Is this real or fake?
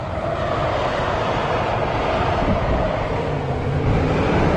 fake